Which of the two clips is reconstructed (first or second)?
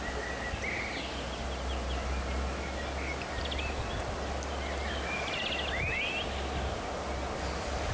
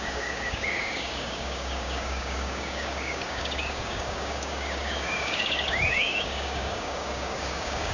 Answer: second